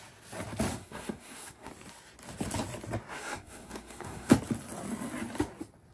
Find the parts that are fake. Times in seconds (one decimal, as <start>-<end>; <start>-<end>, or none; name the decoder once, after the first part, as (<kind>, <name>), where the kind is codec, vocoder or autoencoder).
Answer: 0.7-1.7 (codec, SNAC); 3.1-4.3